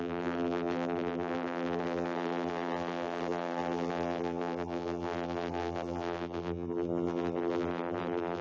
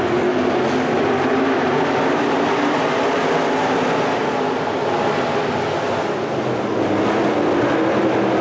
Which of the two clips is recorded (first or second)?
second